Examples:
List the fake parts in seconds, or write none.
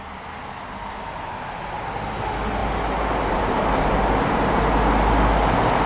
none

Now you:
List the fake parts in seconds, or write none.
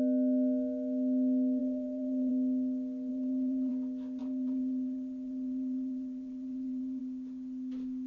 1.6-2.3 (vocoder, Vocos); 3.1-3.7; 4.2-7.0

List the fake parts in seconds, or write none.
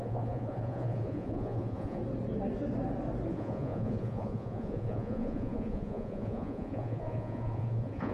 0.0-2.0 (vocoder, Vocos); 3.3-8.1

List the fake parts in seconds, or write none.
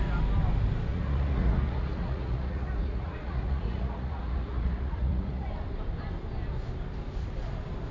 0.9-5.5 (vocoder, Vocos)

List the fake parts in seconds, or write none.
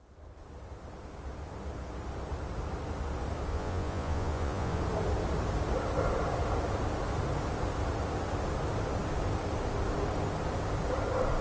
3.5-4.8 (vocoder, Vocos)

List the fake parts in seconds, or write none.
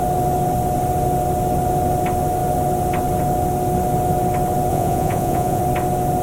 4.7-5.6 (vocoder, Vocos)